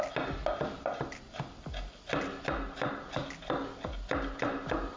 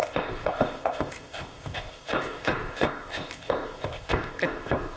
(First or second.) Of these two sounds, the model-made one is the second